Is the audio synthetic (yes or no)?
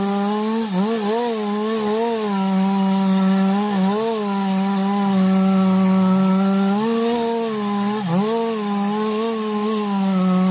no